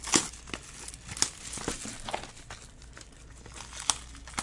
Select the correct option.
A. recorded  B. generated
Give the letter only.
A